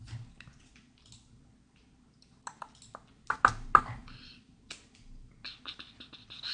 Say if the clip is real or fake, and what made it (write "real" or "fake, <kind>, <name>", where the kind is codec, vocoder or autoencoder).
real